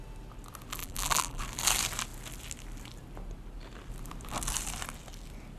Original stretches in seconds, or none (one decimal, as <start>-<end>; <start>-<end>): 0.0-0.8; 1.4-5.6